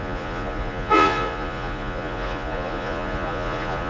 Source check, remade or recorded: remade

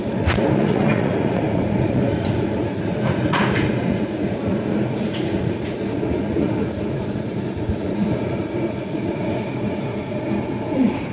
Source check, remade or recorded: remade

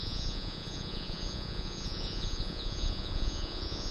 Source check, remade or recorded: remade